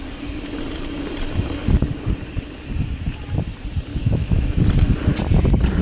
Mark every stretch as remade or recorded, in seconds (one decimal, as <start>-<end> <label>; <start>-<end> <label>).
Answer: 0.0-3.9 recorded; 3.9-4.5 remade; 4.5-5.8 recorded